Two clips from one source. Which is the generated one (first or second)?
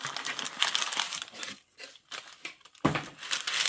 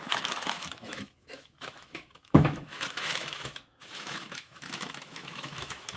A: second